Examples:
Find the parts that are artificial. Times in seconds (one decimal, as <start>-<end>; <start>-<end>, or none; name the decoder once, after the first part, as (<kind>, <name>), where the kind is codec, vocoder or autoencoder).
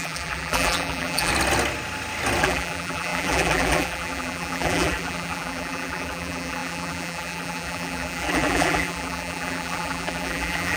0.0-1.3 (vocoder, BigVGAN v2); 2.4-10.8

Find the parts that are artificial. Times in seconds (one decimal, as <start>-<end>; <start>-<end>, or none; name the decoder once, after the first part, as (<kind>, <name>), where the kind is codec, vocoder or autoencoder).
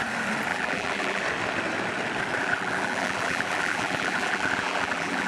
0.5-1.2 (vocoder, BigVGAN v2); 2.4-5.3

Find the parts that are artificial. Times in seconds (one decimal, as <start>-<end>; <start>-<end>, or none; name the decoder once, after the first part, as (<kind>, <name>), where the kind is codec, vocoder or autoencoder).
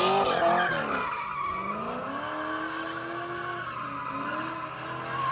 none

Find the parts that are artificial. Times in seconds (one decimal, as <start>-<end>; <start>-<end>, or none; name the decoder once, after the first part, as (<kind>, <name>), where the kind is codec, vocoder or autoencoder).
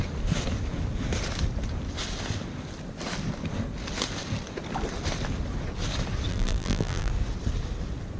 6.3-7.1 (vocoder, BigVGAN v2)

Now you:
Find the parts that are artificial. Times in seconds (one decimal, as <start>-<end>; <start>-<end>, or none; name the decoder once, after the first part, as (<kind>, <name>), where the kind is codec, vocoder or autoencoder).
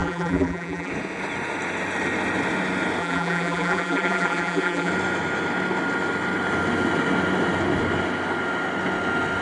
0.0-0.9 (vocoder, BigVGAN v2); 3.0-4.9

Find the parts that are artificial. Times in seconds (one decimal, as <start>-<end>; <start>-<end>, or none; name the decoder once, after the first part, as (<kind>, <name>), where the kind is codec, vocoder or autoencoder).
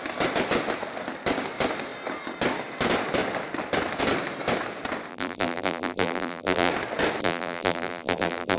5.1-6.7 (vocoder, BigVGAN v2); 7.2-8.6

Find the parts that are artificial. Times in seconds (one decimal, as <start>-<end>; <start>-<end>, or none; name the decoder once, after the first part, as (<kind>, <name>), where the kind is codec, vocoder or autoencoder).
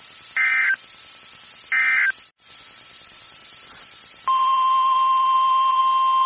2.0-5.8 (vocoder, BigVGAN v2)